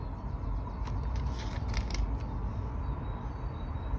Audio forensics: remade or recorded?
recorded